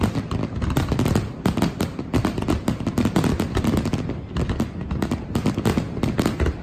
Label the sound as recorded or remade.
recorded